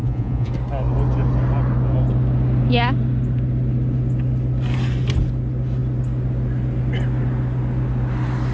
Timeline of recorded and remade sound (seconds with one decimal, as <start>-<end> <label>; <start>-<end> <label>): 0.0-0.5 remade; 0.5-8.5 recorded